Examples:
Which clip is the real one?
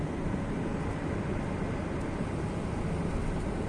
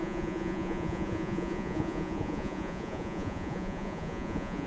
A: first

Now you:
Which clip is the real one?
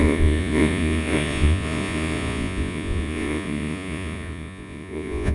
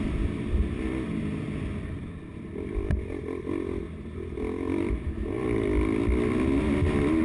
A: second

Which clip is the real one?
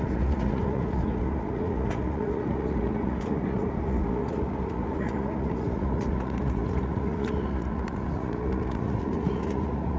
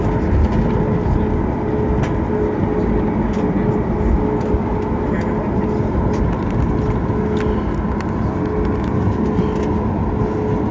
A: second